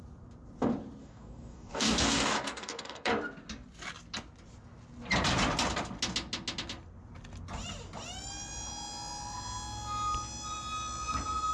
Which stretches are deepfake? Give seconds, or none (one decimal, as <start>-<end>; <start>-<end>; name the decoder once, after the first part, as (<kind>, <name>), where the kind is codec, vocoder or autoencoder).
1.0-3.1 (codec, DAC)